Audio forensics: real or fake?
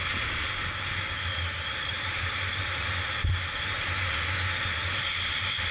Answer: real